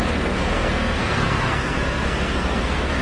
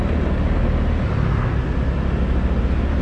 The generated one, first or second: first